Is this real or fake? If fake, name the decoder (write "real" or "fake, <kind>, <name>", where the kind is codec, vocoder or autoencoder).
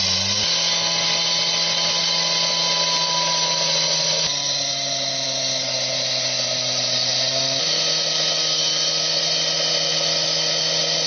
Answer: real